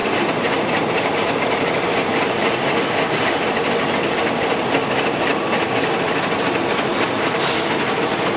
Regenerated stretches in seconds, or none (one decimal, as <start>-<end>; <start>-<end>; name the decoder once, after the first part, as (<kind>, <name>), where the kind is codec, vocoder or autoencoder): 3.2-7.4 (vocoder, BigVGAN v2)